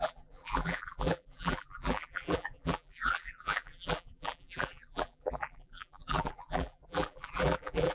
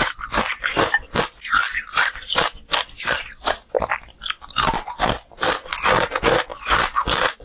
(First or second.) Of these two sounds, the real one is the second